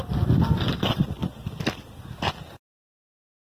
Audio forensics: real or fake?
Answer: real